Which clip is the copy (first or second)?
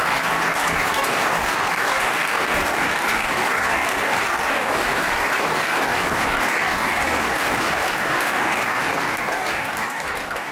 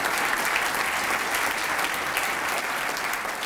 first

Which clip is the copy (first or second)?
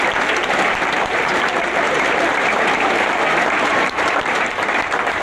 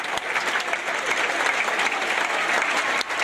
first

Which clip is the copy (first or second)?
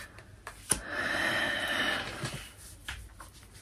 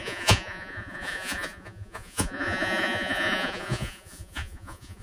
second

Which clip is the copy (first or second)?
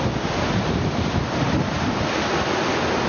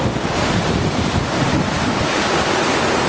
second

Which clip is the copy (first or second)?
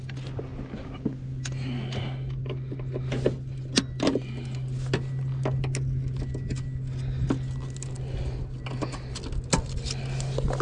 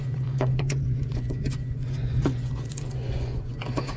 second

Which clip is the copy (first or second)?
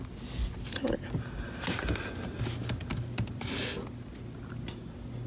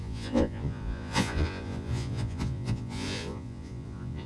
second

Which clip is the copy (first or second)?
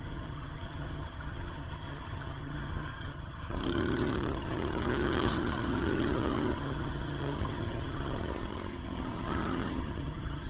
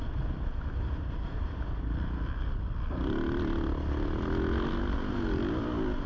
first